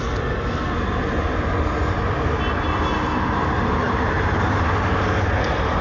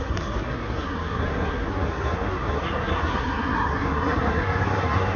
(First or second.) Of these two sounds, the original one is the first